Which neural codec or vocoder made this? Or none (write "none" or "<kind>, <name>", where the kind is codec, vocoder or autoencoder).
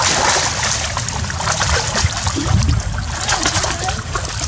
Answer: none